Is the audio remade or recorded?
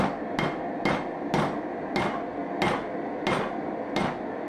recorded